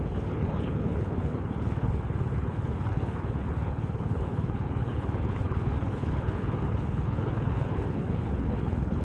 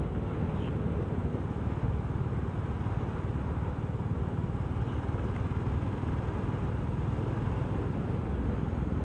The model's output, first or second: first